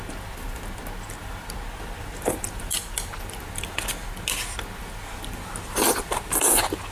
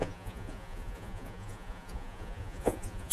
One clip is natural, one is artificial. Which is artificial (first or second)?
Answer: second